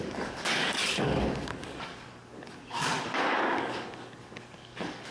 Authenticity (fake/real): fake